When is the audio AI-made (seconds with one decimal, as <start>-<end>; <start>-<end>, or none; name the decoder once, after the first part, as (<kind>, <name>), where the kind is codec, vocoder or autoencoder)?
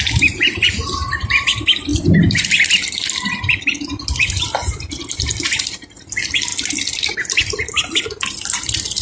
1.9-5.4 (vocoder, BigVGAN v2)